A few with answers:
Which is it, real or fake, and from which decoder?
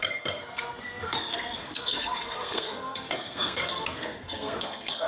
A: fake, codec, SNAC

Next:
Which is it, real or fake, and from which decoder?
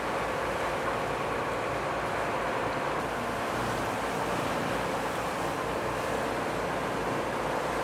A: real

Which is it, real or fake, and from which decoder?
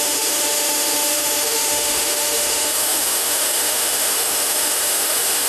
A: fake, autoencoder, DAC-VAE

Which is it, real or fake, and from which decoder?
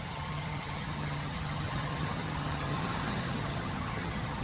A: fake, vocoder, HiFi-GAN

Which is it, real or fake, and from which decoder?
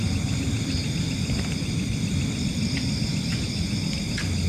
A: real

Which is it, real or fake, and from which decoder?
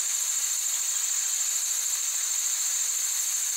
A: real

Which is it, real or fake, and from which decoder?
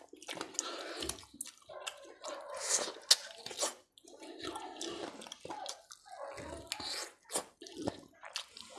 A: real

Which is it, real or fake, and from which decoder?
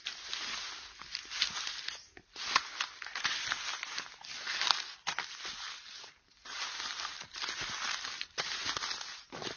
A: real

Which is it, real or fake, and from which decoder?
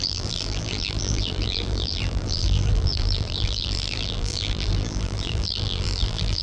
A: fake, vocoder, BigVGAN v2